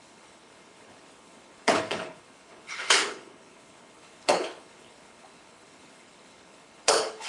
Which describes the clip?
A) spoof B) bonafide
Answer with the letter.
A